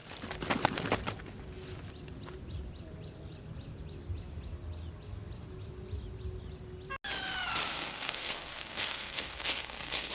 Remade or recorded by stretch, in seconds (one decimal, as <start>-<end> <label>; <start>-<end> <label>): 0.0-7.7 recorded; 7.7-10.1 remade